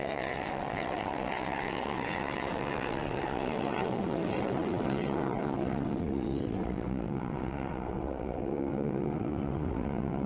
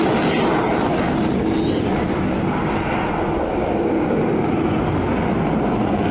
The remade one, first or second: first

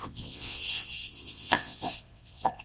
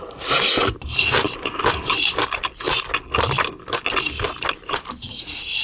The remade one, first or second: first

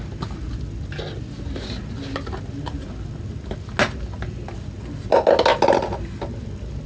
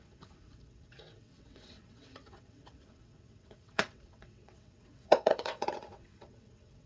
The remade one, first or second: second